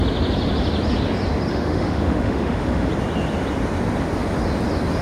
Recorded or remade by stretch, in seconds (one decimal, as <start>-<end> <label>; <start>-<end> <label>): 0.0-1.5 recorded; 1.5-2.9 remade; 2.9-5.0 recorded